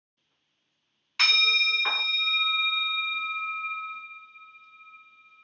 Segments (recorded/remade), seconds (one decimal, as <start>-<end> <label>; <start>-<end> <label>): 0.0-5.4 recorded